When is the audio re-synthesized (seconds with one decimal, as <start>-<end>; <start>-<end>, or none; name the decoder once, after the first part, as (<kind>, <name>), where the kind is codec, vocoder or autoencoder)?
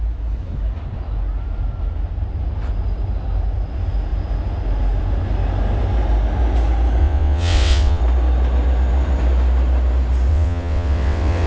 7.0-8.0 (vocoder, WaveNeXt); 10.3-11.5